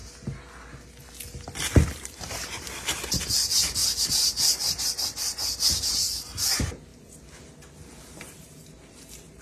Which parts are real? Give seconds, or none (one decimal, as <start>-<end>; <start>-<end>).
0.0-1.9; 3.8-5.8; 6.9-8.2